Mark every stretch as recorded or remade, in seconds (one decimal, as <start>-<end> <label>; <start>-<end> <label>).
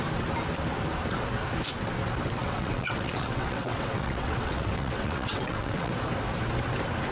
0.0-2.4 recorded; 2.4-5.9 remade; 5.9-7.1 recorded